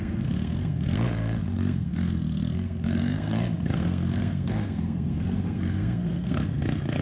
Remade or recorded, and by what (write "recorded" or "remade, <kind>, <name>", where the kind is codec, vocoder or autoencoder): remade, codec, SNAC